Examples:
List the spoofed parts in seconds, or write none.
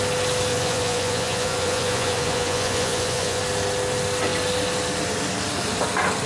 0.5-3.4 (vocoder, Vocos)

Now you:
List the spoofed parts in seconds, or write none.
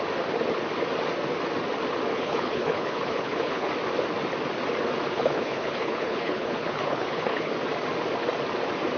2.1-3.7 (codec, HILCodec); 5.1-7.5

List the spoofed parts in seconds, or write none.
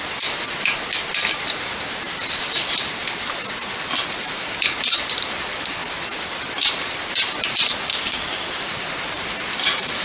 7.9-8.6 (codec, DAC)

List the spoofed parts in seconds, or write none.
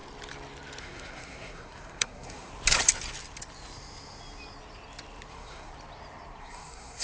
0.8-2.5 (codec, SNAC); 5.3-5.7; 6.4-7.0